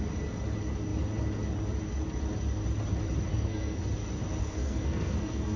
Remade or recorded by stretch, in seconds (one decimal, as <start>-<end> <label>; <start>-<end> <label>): 0.0-3.3 recorded; 3.3-3.8 remade; 3.8-4.4 recorded; 4.4-5.6 remade